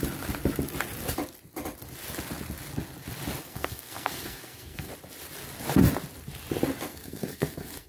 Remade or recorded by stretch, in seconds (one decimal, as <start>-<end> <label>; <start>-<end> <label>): 0.0-3.4 recorded; 3.4-4.9 remade; 4.9-6.9 recorded; 6.9-7.9 remade